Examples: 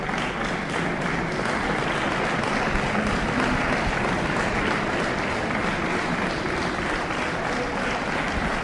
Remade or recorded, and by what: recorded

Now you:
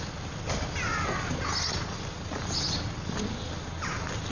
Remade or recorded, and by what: recorded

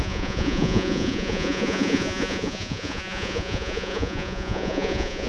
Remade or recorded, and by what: remade, vocoder, Vocos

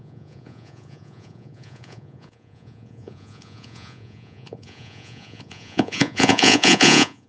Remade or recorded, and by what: remade, vocoder, Vocos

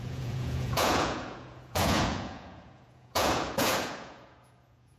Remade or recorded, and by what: remade, vocoder, Vocos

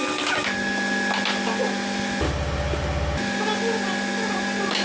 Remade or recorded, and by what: recorded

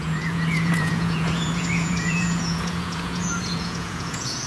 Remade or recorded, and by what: remade, vocoder, Vocos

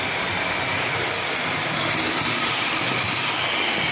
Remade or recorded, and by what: recorded